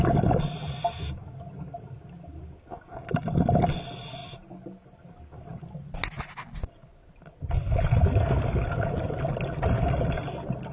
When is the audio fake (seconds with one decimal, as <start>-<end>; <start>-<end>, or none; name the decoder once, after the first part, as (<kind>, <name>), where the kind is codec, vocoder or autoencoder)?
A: none